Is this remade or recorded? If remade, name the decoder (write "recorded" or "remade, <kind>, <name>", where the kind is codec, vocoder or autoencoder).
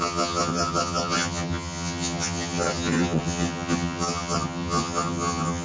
remade, vocoder, HiFi-GAN